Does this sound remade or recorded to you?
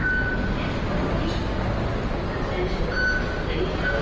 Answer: recorded